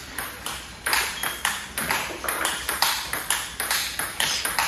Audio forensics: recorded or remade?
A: remade